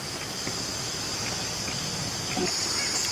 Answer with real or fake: real